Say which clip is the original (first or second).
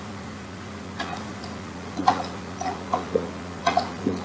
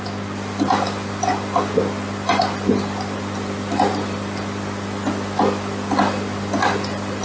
second